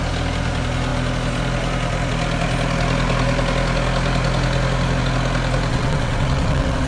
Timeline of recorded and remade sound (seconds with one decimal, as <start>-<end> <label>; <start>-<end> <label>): 0.0-5.7 recorded; 5.7-6.9 remade